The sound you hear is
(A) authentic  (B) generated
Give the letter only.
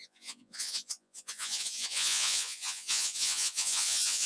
B